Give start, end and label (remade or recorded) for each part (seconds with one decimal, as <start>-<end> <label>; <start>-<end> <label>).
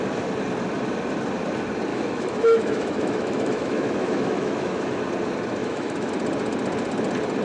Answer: 0.0-1.9 recorded; 1.9-5.0 remade; 5.0-5.6 recorded; 5.6-6.1 remade; 6.1-7.4 recorded